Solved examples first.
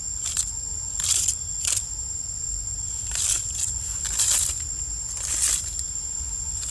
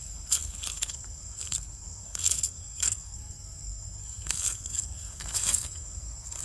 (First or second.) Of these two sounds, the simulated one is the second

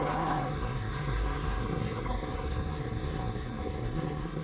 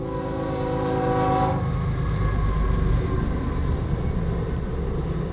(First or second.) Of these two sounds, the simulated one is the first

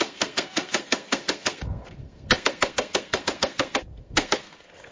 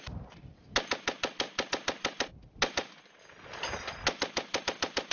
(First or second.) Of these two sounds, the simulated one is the first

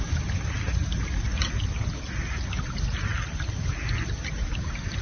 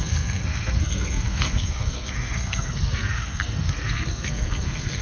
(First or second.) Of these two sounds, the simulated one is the second